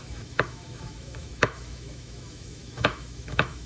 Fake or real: fake